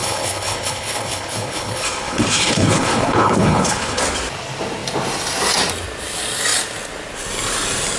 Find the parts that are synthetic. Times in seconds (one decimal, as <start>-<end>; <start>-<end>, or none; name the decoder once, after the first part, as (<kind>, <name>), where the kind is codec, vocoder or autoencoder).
0.0-4.0 (codec, HILCodec)